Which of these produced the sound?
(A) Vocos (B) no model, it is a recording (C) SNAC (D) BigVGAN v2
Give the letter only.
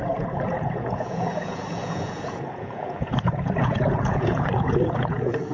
A